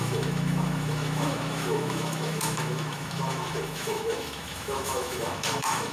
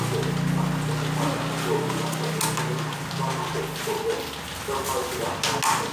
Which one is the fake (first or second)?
first